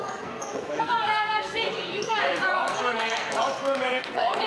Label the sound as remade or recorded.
remade